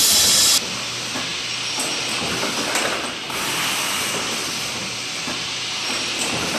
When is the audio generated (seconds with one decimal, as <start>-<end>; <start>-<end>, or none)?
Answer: none